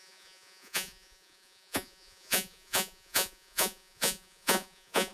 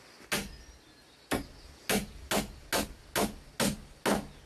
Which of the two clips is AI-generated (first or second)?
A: first